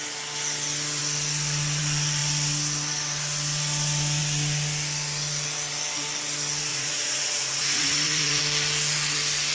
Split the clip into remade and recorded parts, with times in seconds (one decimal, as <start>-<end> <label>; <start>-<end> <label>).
0.0-6.7 recorded; 6.7-8.4 remade; 8.4-9.5 recorded